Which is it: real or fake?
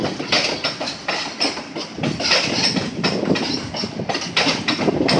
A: real